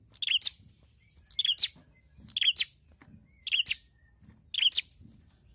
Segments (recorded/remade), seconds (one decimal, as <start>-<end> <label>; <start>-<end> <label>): 0.0-5.5 recorded